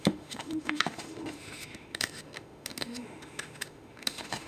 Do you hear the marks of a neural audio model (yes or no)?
yes